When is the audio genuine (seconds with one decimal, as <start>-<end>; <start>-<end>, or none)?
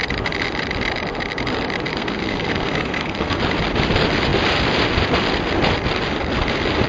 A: 0.0-1.9; 3.4-6.9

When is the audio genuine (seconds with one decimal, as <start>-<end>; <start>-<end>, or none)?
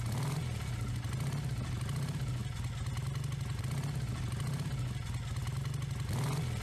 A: 0.0-6.6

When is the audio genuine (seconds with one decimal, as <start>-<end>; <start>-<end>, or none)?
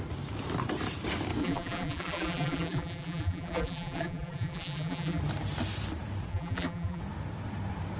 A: 0.0-1.4; 5.2-6.3; 7.0-8.0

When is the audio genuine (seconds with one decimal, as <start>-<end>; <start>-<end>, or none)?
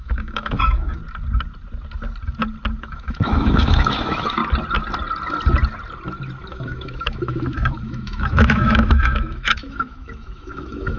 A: 1.0-2.8; 4.4-6.5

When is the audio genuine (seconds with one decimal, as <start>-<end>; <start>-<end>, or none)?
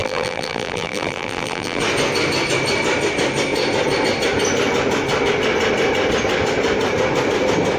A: 1.8-7.8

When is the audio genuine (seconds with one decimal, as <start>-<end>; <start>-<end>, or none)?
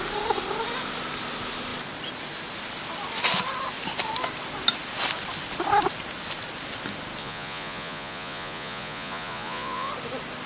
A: 0.0-7.2; 9.9-10.5